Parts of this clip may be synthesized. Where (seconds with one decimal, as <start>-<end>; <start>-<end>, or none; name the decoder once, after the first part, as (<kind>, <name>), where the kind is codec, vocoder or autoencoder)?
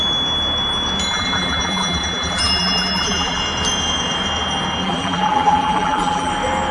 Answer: 1.1-3.4 (vocoder, BigVGAN v2); 4.8-6.3